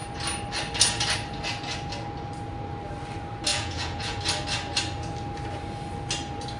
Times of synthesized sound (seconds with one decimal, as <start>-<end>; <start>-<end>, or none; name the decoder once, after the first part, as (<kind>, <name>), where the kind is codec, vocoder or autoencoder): 3.5-4.2 (vocoder, Vocos)